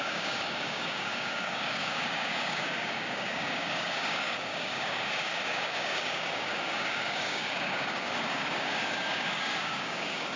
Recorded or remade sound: remade